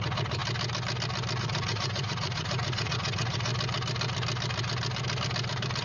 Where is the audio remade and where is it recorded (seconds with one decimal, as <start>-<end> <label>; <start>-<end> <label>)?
0.0-0.4 remade; 0.4-1.4 recorded; 1.4-3.5 remade; 3.5-5.8 recorded